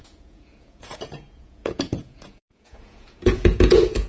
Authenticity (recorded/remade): remade